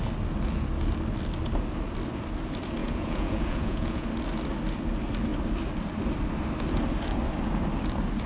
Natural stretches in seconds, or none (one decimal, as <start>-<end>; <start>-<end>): 0.0-2.8; 4.1-8.3